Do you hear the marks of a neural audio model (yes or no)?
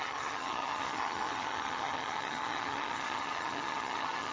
yes